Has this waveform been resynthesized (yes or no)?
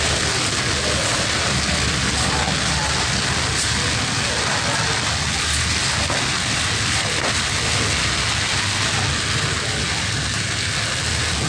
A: no